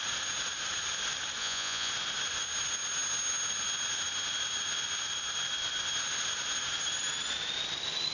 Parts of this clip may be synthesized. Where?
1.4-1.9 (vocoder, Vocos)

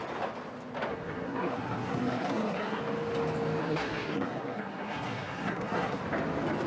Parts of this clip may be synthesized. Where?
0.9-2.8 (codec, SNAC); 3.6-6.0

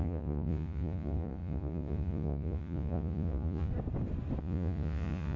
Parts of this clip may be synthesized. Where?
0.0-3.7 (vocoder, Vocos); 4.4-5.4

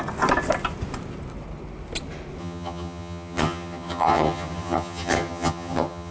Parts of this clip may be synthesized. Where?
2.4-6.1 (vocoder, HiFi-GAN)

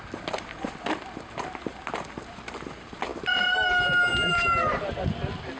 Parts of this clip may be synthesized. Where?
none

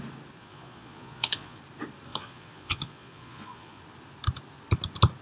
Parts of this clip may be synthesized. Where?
0.4-1.6 (vocoder, Vocos); 2.1-3.8